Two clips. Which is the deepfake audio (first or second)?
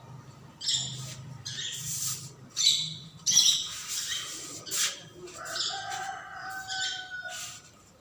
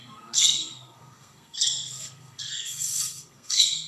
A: second